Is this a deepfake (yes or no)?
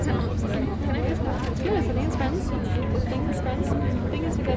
no